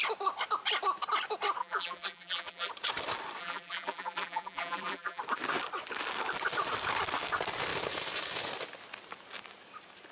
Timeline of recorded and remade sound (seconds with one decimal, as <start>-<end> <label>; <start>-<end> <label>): 0.0-1.6 recorded; 1.6-2.7 remade; 2.7-3.4 recorded; 3.4-5.2 remade; 5.2-10.1 recorded

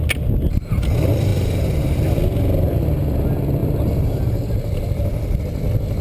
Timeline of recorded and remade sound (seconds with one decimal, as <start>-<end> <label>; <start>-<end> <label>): 0.0-1.3 recorded; 1.3-2.2 remade; 2.2-3.6 recorded; 3.6-5.4 remade; 5.4-6.0 recorded

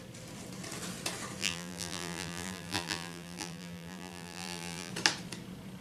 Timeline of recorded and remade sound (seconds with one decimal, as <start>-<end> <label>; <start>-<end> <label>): 0.0-1.4 recorded; 1.4-4.9 remade; 4.9-5.8 recorded

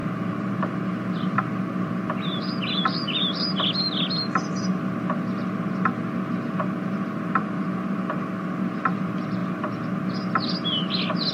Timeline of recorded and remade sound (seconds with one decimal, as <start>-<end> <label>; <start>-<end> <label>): 0.0-1.4 remade; 1.4-11.3 recorded

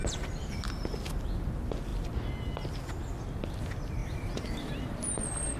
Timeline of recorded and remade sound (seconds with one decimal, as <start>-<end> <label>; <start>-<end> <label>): 0.0-4.0 recorded; 4.0-5.1 remade; 5.1-5.6 recorded

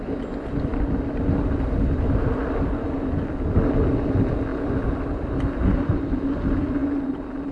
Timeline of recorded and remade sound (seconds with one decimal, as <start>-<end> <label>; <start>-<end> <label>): 0.0-4.5 recorded; 4.5-5.0 remade; 5.0-7.5 recorded

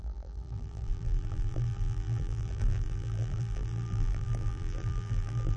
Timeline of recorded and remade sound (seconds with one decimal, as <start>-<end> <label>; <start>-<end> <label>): 0.0-5.6 remade

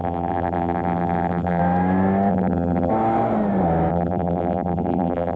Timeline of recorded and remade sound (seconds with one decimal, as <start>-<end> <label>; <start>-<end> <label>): 0.0-1.6 remade; 1.6-2.3 recorded; 2.3-2.9 remade; 2.9-3.9 recorded; 3.9-5.4 remade